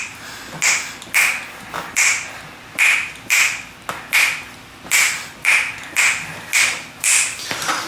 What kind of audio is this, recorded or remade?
recorded